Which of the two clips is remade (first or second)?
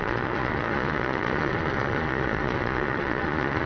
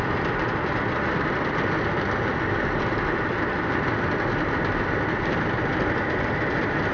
first